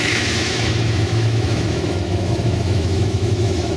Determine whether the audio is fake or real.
fake